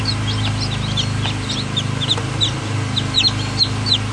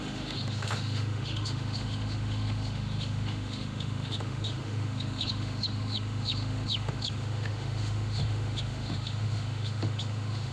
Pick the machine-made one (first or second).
second